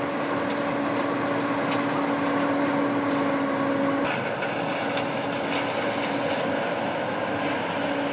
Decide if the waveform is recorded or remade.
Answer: recorded